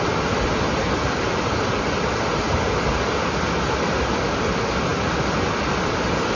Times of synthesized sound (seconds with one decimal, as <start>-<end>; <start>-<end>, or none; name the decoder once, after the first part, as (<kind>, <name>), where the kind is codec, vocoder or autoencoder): none